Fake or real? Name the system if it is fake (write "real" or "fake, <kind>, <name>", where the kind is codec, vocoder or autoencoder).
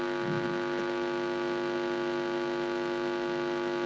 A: real